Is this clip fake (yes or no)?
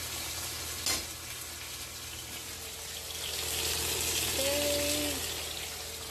no